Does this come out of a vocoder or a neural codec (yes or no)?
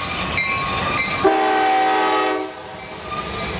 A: no